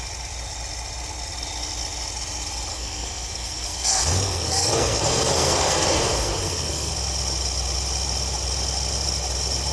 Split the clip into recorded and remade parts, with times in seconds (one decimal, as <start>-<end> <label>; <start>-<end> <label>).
0.0-2.7 recorded; 2.7-6.9 remade; 6.9-9.7 recorded